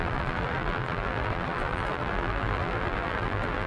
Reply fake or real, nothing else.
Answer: fake